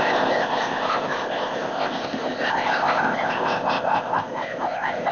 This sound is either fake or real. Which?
fake